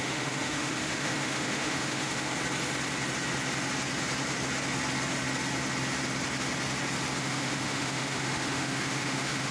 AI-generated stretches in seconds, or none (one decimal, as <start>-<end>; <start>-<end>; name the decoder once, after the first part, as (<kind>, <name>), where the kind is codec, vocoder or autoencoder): 0.0-2.3 (autoencoder, DAC-VAE); 7.2-9.5